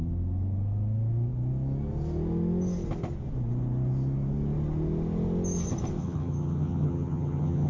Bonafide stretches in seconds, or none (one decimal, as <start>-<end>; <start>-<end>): 0.0-6.0